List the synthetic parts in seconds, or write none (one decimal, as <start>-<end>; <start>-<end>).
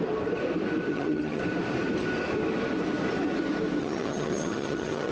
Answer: 0.9-1.4; 3.8-5.1